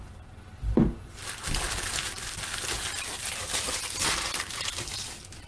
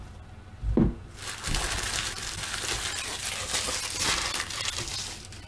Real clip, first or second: second